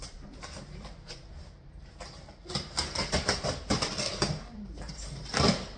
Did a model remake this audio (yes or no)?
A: yes